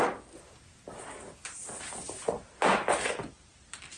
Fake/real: real